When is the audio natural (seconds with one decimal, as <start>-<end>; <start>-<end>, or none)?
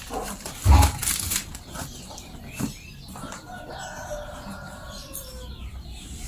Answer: 0.0-6.3